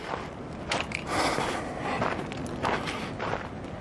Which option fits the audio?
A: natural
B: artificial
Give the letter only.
A